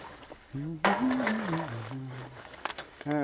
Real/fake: fake